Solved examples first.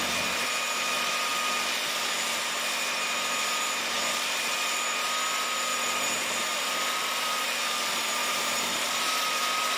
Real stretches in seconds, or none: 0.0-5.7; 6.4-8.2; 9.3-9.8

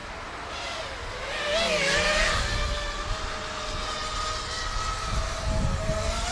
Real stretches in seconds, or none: 0.0-6.3

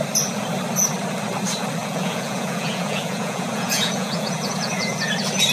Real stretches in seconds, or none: 0.0-1.8; 5.1-5.5

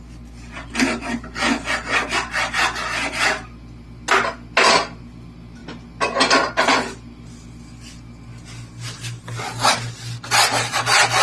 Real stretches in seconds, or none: 0.0-11.2

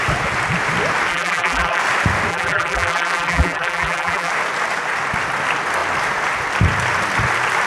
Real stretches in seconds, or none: 0.0-1.1; 1.8-2.3; 4.3-7.7